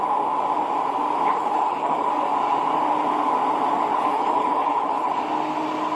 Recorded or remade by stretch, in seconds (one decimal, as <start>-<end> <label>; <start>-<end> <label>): 0.0-1.3 recorded; 1.3-2.1 remade; 2.1-3.9 recorded; 3.9-5.2 remade; 5.2-5.9 recorded